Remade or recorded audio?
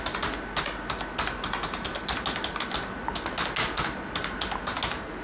recorded